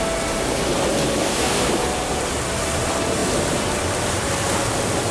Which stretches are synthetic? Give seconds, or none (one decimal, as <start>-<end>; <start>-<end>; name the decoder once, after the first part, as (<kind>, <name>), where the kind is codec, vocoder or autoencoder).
1.2-1.7 (codec, DAC)